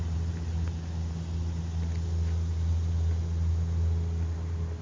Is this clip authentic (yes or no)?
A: yes